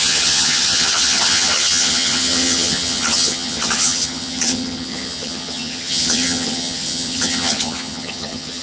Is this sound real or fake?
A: fake